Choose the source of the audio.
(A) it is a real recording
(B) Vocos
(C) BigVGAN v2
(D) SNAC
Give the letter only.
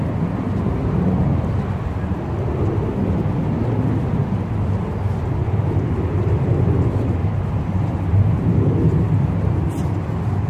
A